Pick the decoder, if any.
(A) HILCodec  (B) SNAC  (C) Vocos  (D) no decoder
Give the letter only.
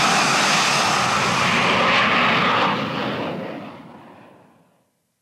D